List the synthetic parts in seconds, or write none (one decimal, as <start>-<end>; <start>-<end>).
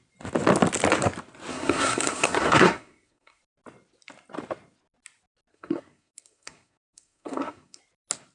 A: 1.5-3.4; 5.5-7.8